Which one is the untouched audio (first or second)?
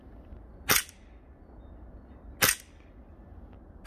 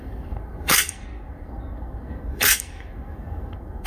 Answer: first